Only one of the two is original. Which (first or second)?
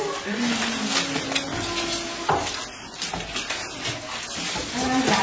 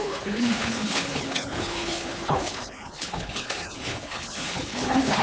first